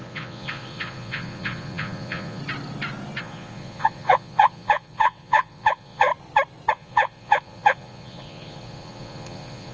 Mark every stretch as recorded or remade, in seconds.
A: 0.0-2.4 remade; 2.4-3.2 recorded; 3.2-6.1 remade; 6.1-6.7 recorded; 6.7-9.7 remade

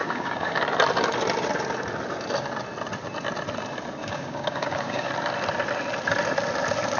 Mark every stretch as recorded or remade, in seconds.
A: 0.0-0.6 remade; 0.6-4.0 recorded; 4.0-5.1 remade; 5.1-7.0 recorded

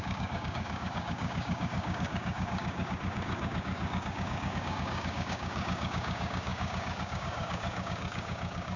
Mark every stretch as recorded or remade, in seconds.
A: 0.0-8.8 remade

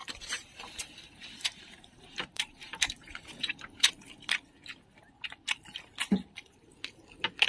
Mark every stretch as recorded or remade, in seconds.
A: 0.0-3.9 remade; 3.9-7.5 recorded

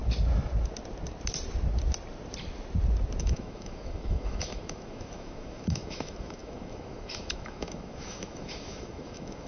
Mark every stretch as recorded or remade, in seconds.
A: 0.0-3.2 recorded; 3.2-9.5 remade

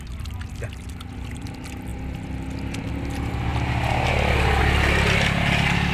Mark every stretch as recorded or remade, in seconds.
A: 0.0-5.9 recorded

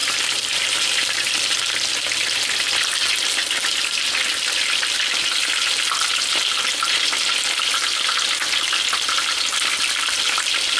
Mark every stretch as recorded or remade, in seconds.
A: 0.0-1.3 remade; 1.3-3.4 recorded; 3.4-4.1 remade; 4.1-10.8 recorded

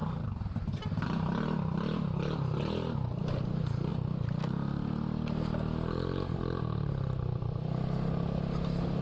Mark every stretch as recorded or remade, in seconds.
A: 0.0-3.2 remade; 3.2-9.0 recorded